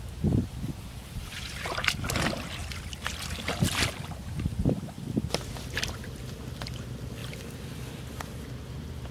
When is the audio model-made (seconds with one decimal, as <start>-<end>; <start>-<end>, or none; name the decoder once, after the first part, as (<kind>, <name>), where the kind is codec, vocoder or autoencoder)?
none